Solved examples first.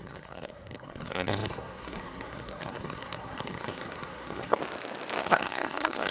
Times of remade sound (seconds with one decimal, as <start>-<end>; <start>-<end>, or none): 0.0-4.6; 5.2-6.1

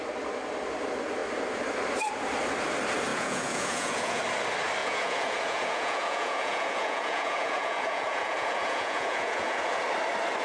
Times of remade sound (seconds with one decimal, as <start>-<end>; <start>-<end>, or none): 3.1-4.2; 4.8-9.8

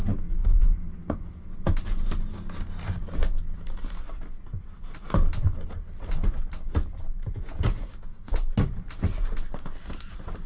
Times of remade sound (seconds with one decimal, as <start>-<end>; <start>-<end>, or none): 0.4-1.3